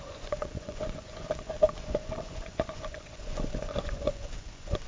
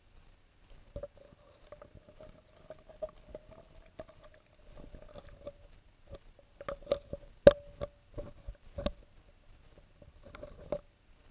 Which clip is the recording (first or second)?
second